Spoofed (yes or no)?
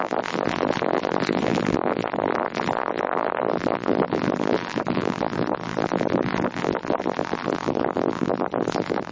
yes